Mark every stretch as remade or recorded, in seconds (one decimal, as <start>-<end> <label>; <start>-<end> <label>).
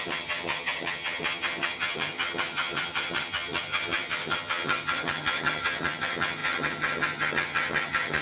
0.0-8.2 remade